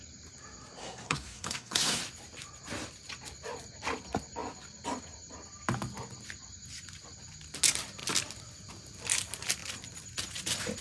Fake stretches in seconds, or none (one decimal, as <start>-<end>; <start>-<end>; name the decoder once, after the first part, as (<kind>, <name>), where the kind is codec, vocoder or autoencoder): 0.8-2.0 (codec, SNAC)